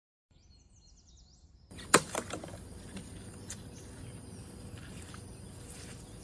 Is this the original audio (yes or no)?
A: no